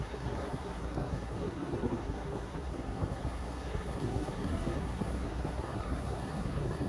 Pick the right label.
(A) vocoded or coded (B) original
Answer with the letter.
A